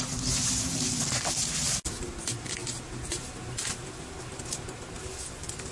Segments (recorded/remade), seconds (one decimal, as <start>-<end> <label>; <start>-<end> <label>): 0.0-5.7 recorded